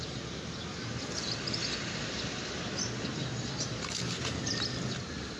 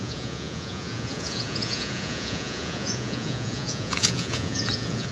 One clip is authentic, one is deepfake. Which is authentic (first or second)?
first